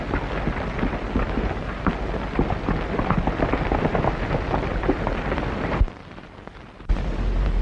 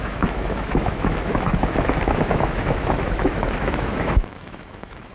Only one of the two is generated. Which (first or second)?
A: second